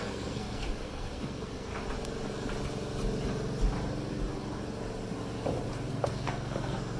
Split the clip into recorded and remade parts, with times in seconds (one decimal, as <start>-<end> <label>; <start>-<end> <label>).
0.0-1.7 remade; 1.7-5.9 recorded; 5.9-7.0 remade